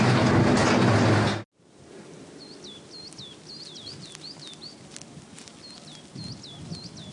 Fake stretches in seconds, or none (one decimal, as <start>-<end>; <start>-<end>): none